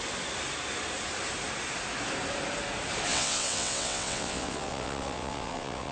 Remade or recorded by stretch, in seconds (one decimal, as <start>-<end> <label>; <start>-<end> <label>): 0.0-3.1 recorded; 3.1-5.9 remade